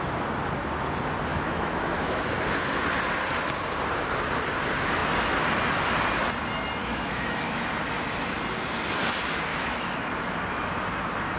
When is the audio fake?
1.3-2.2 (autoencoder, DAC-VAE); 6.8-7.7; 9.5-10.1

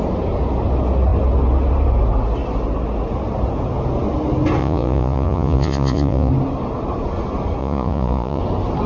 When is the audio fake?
4.6-6.3 (vocoder, Vocos); 7.6-8.4